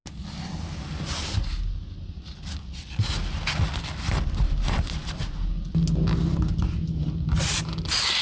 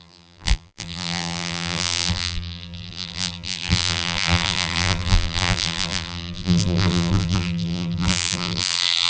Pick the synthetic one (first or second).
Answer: second